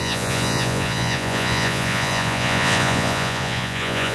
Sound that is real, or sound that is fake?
fake